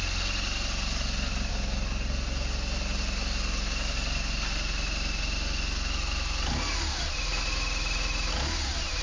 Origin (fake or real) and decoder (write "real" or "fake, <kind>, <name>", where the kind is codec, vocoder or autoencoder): real